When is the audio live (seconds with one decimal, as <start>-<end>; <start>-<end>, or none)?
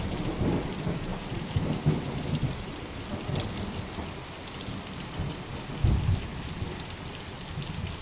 0.0-1.1; 3.9-8.0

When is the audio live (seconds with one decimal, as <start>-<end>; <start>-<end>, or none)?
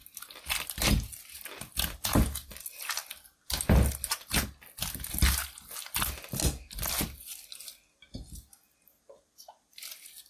0.0-10.3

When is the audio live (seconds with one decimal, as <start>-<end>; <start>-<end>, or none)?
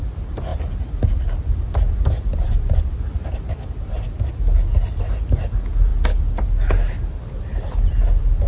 0.0-8.5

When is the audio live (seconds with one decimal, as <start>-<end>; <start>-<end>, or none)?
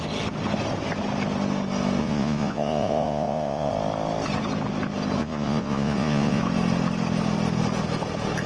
0.0-2.0; 3.7-5.2; 6.4-8.5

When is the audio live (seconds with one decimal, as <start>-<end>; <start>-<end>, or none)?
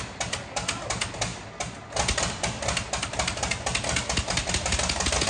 0.0-5.3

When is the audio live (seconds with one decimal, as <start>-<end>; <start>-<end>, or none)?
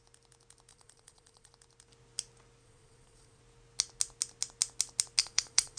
0.0-0.7; 1.5-2.6; 3.4-5.2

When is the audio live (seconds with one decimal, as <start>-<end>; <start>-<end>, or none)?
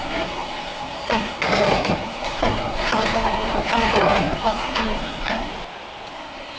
5.5-6.1